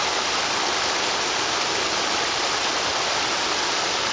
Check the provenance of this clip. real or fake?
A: real